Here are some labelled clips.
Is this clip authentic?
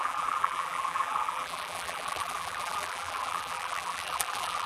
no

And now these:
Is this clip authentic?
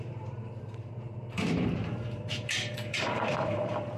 no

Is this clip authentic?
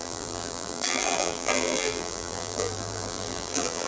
no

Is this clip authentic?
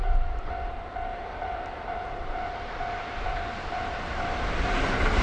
no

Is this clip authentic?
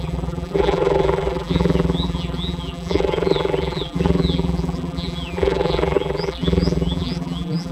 no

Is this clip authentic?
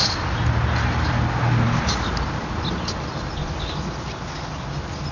yes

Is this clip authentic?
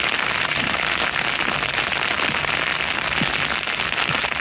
yes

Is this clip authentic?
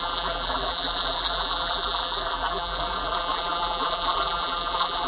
no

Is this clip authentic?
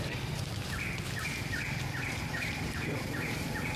no